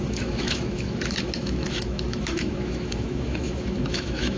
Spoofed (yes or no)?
yes